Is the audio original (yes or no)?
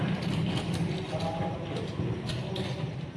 no